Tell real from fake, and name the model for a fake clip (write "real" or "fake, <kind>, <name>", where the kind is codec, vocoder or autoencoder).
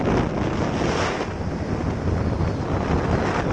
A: real